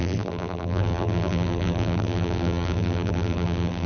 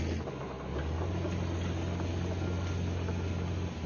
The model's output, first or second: first